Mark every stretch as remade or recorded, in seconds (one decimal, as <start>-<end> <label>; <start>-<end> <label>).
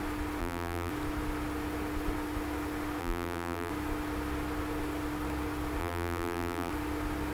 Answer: 0.0-0.4 recorded; 0.4-0.9 remade; 0.9-3.0 recorded; 3.0-3.7 remade; 3.7-5.8 recorded; 5.8-6.7 remade; 6.7-7.3 recorded